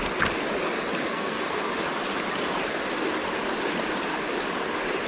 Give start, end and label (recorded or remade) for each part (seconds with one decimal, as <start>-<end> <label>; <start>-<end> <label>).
0.0-1.1 recorded; 1.1-1.7 remade; 1.7-5.1 recorded